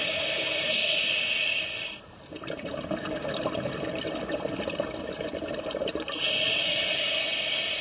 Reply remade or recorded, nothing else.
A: recorded